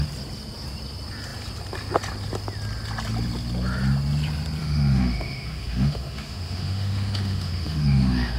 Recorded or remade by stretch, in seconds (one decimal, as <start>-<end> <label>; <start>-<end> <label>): 0.0-4.6 recorded; 4.6-8.4 remade